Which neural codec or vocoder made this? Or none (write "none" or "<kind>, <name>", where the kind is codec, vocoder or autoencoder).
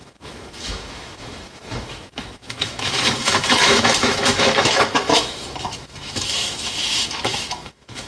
autoencoder, DAC-VAE